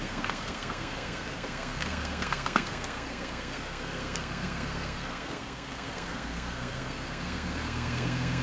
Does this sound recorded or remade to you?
remade